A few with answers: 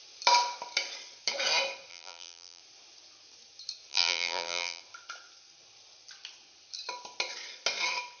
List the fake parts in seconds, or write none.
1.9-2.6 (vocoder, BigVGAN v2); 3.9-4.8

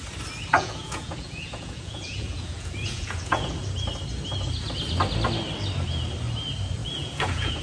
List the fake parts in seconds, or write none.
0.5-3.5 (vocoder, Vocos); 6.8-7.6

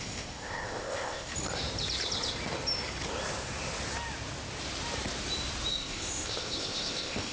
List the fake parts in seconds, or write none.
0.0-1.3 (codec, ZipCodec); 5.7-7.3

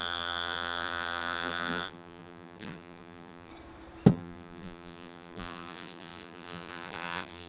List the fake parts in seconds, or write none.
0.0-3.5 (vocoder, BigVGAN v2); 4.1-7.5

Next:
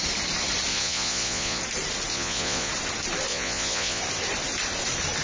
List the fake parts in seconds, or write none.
0.7-1.6 (vocoder, Vocos); 2.1-2.7; 3.3-4.0